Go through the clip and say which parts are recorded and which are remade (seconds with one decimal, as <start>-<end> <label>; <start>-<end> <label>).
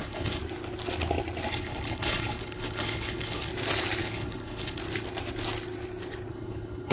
0.0-0.4 remade; 0.4-1.5 recorded; 1.5-3.5 remade; 3.5-4.0 recorded; 4.0-4.8 remade; 4.8-6.3 recorded; 6.3-6.9 remade